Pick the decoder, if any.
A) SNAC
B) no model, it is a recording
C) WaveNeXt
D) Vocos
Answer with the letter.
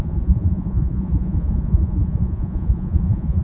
D